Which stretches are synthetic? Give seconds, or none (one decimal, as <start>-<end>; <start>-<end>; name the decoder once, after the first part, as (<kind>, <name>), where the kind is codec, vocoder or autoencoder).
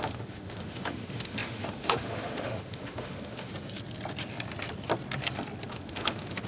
0.0-3.5 (autoencoder, DAC-VAE); 5.7-6.5